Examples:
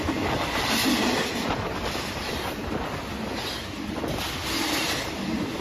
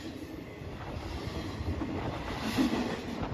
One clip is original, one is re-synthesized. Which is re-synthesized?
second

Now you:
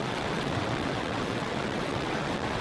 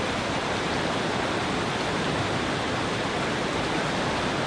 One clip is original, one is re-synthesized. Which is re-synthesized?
first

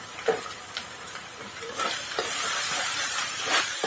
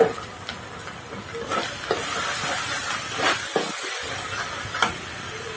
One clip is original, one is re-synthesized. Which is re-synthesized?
first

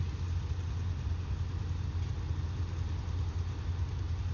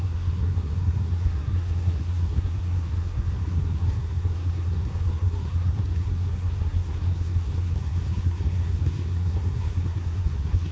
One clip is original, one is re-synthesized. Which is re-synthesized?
second